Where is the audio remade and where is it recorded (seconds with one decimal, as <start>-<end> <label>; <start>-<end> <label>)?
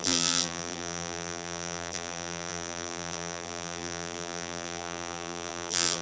0.0-6.0 remade